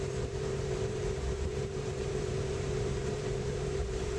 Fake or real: fake